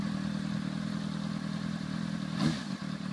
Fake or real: real